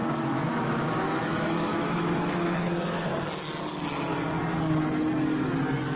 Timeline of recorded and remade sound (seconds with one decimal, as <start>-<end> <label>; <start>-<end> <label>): 0.0-3.1 remade; 3.1-6.0 recorded